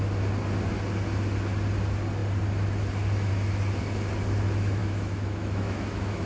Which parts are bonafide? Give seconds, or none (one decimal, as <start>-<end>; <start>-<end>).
0.0-4.8